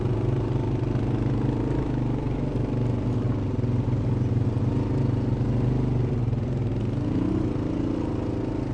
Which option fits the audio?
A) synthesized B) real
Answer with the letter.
B